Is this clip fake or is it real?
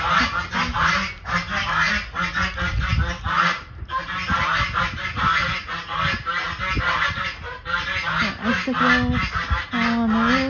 real